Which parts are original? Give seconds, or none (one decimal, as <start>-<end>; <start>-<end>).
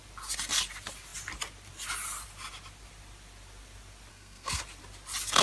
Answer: 0.0-4.1; 4.6-5.4